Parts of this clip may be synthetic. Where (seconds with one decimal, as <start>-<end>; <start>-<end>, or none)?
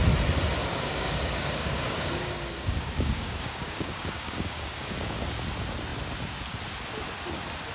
0.6-5.2